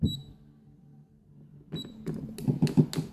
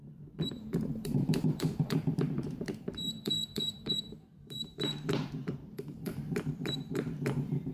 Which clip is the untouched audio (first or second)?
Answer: first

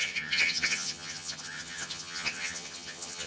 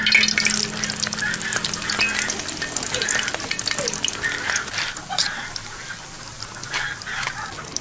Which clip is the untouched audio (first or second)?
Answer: second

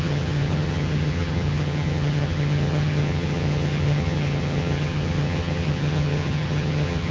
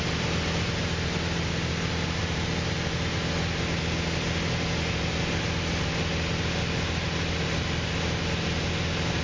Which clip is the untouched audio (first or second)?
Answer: second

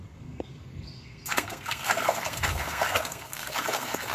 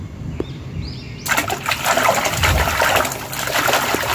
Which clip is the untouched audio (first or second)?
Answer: second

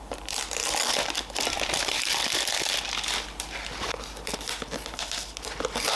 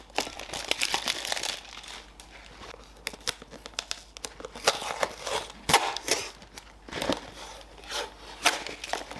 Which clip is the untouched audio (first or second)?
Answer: second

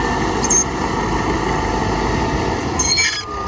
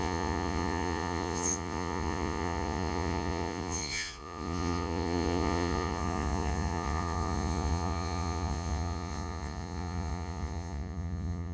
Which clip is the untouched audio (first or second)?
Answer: first